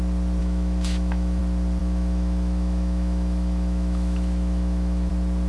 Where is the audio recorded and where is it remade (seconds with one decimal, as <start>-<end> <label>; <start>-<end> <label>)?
0.0-0.4 recorded; 0.4-1.4 remade; 1.4-1.8 recorded; 1.8-5.1 remade; 5.1-5.5 recorded